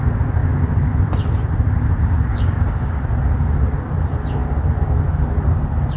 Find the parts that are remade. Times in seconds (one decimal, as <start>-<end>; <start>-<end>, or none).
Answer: 2.3-3.0